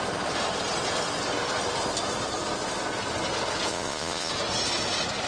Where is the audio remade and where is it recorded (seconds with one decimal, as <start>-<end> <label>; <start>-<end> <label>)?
0.0-3.7 recorded; 3.7-4.3 remade; 4.3-5.3 recorded